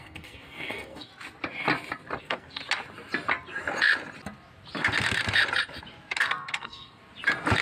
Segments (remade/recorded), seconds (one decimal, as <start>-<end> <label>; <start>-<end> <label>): 0.0-1.1 remade; 1.1-2.2 recorded; 2.2-2.6 remade; 2.6-6.2 recorded; 6.2-7.0 remade; 7.0-7.6 recorded